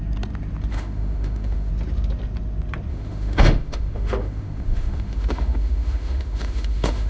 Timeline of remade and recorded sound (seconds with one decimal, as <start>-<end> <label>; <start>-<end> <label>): 0.0-0.7 recorded; 0.7-1.7 remade; 1.7-2.9 recorded; 2.9-7.1 remade